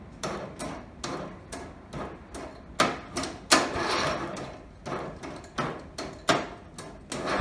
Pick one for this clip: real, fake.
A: real